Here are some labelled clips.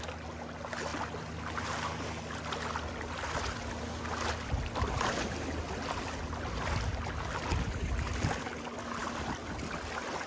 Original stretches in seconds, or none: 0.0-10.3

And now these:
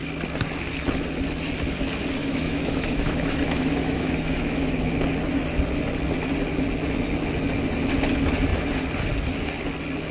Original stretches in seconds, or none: 0.0-2.2; 4.9-10.1

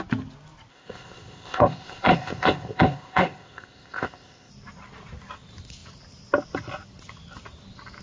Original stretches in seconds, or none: 0.0-0.7; 4.5-8.0